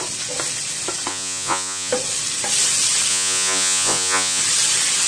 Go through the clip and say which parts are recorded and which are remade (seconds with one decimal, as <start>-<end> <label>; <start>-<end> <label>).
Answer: 0.0-1.1 recorded; 1.1-1.9 remade; 1.9-3.1 recorded; 3.1-4.4 remade; 4.4-5.1 recorded